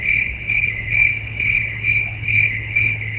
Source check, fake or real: fake